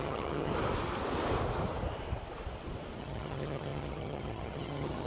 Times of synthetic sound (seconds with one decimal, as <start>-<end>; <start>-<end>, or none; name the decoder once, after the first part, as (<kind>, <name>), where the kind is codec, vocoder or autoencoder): 0.0-0.5 (vocoder, HiFi-GAN); 3.0-5.1